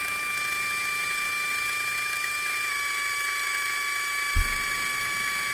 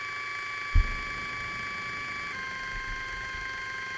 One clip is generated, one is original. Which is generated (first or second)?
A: first